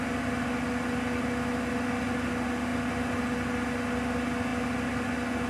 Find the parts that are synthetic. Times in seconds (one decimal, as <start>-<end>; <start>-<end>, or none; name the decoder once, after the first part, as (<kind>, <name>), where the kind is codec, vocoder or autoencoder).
none